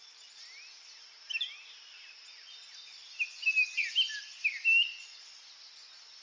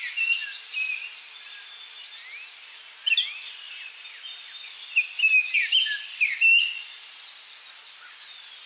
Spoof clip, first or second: second